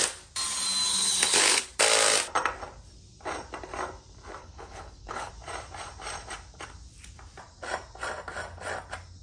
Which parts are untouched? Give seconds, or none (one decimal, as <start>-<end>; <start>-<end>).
0.0-0.9; 1.7-4.4; 5.3-9.2